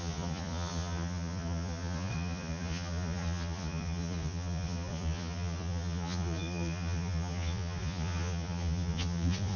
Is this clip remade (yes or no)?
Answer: yes